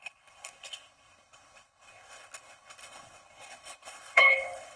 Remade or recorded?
remade